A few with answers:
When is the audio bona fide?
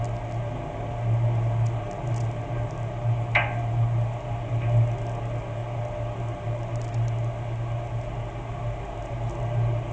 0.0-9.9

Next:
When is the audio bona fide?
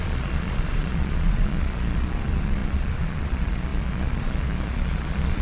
none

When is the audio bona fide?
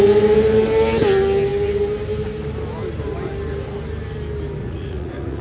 0.0-4.6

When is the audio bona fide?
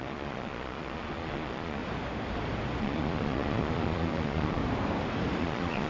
1.8-2.8; 4.6-5.4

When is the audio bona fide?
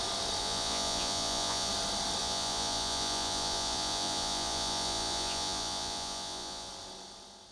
0.0-0.4; 1.7-2.2; 6.7-7.5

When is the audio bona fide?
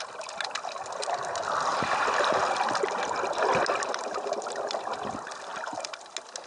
0.0-6.5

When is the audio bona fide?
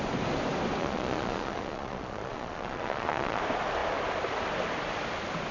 0.0-0.8; 3.4-5.5